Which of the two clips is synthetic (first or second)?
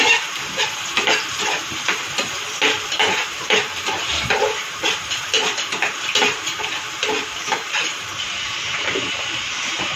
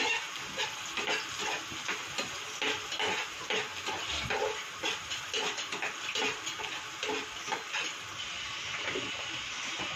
first